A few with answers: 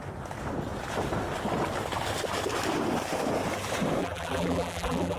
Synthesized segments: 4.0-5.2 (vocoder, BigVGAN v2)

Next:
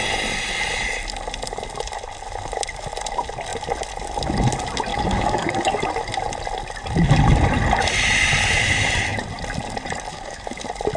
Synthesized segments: 4.9-5.8 (codec, DAC); 10.1-10.6